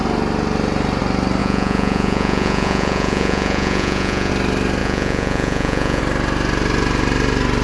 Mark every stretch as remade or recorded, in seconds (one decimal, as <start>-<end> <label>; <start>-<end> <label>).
0.0-1.4 recorded; 1.4-4.3 remade; 4.3-4.8 recorded; 4.8-6.0 remade; 6.0-7.6 recorded